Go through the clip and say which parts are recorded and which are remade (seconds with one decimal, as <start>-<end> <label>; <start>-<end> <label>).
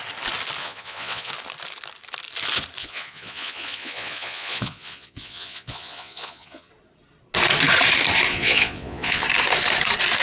0.0-0.6 recorded; 0.6-1.3 remade; 1.3-2.8 recorded; 2.8-6.7 remade; 6.7-8.3 recorded; 8.3-9.2 remade; 9.2-10.2 recorded